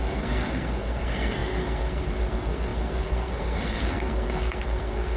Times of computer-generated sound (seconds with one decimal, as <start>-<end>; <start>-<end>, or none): 0.0-5.2